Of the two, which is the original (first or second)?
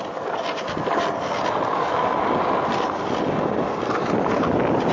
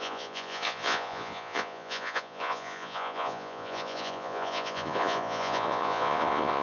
first